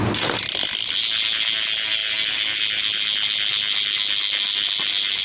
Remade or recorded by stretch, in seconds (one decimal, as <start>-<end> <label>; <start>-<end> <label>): 0.0-5.2 recorded